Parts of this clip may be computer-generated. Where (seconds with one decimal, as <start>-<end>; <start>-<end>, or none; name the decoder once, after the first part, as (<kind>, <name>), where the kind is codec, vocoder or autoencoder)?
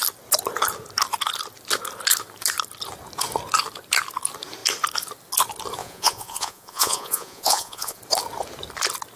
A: 5.8-8.0 (vocoder, Vocos)